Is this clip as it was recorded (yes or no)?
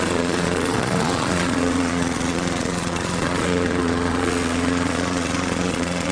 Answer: no